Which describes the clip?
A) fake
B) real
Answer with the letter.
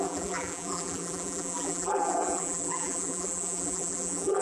A